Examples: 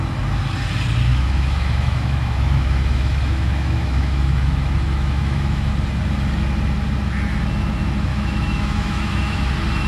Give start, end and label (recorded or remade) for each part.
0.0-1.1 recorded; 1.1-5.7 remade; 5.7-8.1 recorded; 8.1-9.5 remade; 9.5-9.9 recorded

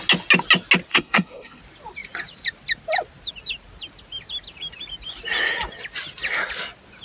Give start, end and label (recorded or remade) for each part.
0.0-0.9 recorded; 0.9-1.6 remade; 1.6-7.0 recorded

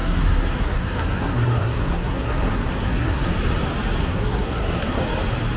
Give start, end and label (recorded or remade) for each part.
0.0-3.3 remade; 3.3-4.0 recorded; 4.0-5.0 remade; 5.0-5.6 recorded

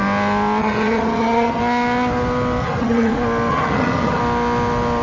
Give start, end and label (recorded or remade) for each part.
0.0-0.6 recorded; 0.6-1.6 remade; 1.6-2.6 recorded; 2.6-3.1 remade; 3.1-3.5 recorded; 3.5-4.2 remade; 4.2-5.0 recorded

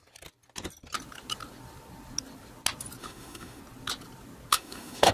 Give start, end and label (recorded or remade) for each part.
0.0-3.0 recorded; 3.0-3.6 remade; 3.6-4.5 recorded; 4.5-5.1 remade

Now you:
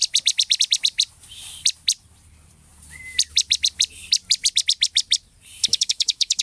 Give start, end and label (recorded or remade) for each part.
0.0-5.7 recorded; 5.7-6.4 remade

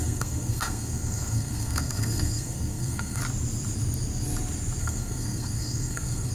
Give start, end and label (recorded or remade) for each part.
0.0-3.2 remade; 3.2-4.8 recorded; 4.8-6.3 remade